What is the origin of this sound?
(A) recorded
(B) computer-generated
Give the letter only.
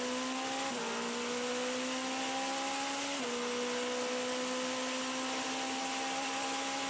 A